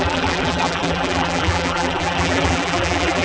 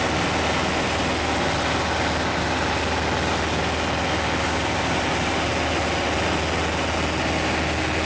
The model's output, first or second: first